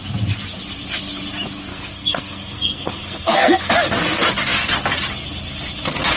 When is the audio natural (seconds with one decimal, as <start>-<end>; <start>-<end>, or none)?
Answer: 0.0-1.7; 3.7-6.2